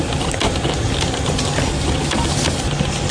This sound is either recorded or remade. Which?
recorded